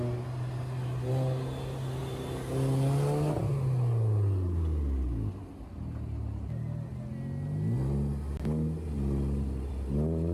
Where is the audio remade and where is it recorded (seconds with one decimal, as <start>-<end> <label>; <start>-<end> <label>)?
0.0-10.3 recorded